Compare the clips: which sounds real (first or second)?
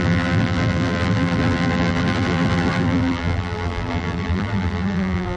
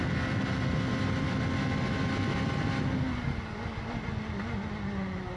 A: second